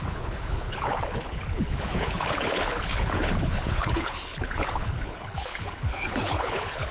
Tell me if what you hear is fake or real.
fake